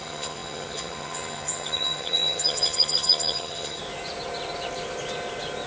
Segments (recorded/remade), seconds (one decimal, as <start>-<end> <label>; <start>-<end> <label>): 0.0-3.8 remade; 3.8-5.7 recorded